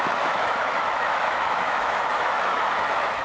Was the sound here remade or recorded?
remade